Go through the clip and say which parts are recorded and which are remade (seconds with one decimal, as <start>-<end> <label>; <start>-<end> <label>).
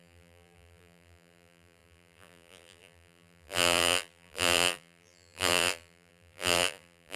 0.0-7.2 remade